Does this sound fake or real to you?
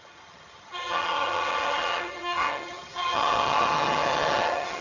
fake